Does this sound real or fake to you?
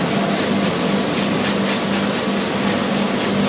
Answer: real